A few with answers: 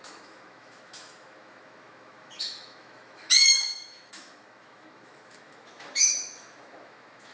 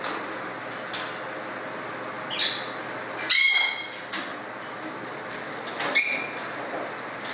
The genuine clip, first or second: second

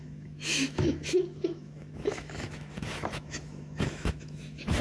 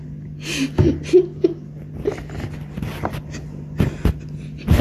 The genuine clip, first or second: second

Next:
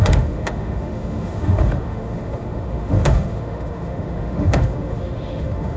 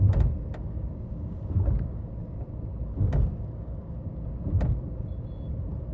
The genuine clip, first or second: second